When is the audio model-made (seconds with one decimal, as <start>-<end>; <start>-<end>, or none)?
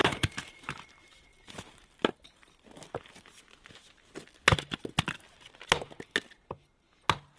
0.0-0.8; 1.3-2.5